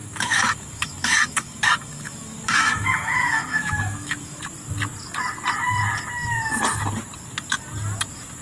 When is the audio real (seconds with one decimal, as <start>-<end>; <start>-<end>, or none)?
4.4-8.4